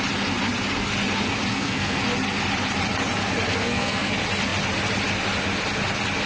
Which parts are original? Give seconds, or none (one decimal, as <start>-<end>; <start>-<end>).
0.0-1.5; 2.0-3.5; 4.1-6.3